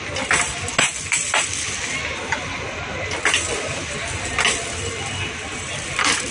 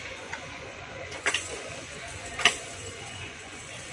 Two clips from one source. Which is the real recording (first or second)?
first